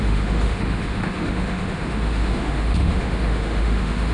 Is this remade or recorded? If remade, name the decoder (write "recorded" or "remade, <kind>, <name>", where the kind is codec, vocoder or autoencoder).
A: remade, autoencoder, DAC-VAE